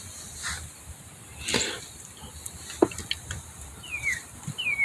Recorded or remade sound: recorded